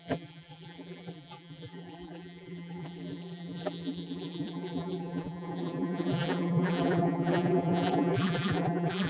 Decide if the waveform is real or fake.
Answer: fake